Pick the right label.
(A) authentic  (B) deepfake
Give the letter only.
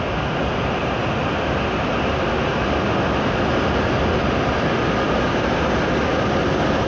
A